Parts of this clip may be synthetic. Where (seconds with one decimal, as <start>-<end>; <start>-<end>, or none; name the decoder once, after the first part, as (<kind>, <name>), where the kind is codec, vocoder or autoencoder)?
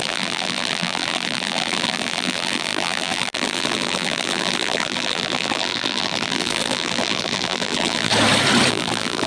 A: 0.0-8.1 (vocoder, BigVGAN v2); 8.7-9.3